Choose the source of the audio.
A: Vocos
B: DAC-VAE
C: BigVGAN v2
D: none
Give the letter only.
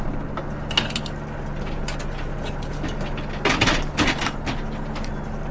D